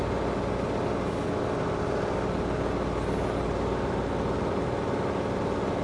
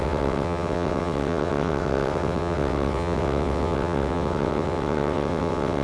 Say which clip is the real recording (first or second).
first